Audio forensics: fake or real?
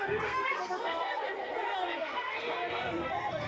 fake